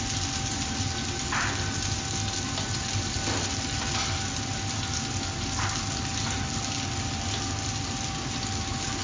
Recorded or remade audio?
recorded